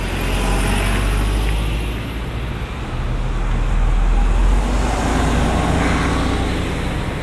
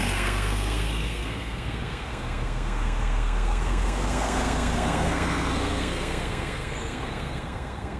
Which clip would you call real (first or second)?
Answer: first